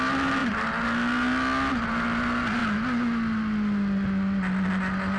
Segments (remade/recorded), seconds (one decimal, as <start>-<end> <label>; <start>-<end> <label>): 0.0-5.2 recorded